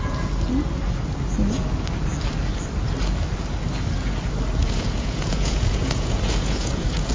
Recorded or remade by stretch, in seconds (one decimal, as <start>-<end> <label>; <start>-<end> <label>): 0.0-4.6 recorded; 4.6-7.1 remade